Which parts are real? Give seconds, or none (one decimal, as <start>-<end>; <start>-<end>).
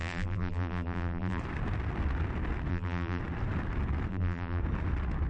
1.4-2.7; 3.2-4.1; 4.6-5.3